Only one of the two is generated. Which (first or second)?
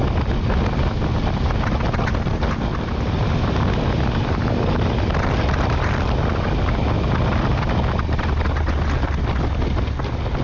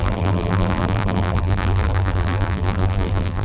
second